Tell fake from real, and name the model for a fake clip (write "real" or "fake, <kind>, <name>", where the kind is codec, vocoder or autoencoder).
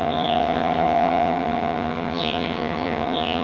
fake, vocoder, HiFi-GAN